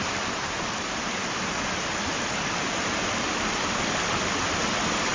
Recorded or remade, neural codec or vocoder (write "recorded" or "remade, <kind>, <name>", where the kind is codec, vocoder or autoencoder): recorded